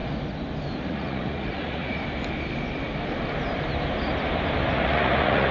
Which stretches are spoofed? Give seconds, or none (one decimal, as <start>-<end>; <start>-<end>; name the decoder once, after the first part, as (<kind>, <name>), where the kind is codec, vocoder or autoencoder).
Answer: 0.8-2.0 (vocoder, Vocos); 4.7-5.5